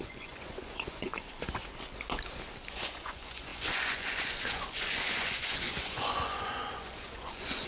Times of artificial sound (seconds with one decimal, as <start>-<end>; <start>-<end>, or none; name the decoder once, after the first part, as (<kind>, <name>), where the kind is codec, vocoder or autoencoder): 0.0-1.6 (vocoder, Vocos); 2.7-7.7